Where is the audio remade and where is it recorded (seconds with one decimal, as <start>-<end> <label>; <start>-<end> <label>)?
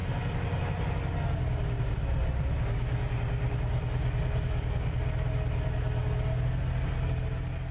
0.0-7.7 recorded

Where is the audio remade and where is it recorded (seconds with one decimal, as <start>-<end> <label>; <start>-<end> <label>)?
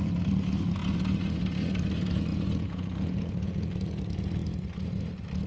0.0-2.3 recorded; 2.3-3.7 remade; 3.7-5.5 recorded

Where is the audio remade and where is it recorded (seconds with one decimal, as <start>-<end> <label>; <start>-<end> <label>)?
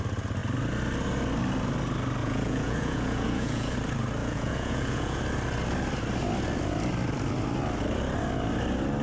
0.0-2.2 recorded; 2.2-3.7 remade; 3.7-4.2 recorded; 4.2-5.2 remade; 5.2-9.0 recorded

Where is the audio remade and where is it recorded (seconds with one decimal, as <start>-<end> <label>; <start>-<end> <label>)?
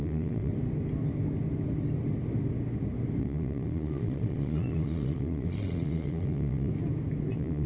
0.0-0.5 remade; 0.5-3.2 recorded; 3.2-6.7 remade; 6.7-7.3 recorded; 7.3-7.7 remade